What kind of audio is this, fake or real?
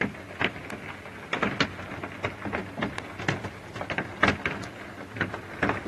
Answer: real